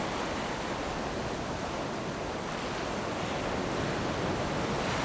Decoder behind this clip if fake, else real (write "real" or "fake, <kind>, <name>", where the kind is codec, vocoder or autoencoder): real